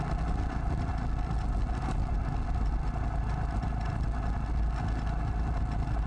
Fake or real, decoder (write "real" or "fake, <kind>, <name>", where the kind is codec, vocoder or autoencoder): real